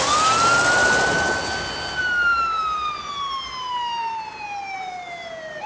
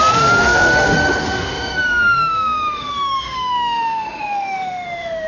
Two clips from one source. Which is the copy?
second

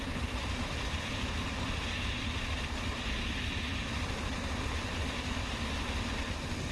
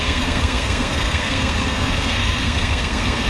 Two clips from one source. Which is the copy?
second